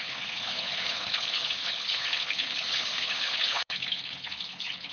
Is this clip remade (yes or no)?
yes